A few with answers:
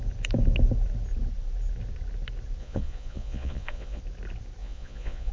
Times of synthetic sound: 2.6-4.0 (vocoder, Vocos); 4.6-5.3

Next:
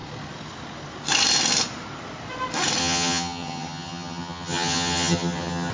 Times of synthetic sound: 2.8-5.7 (vocoder, HiFi-GAN)